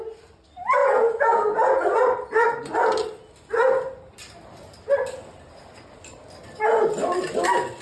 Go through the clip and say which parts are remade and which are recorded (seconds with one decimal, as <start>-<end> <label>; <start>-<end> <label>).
0.0-7.8 recorded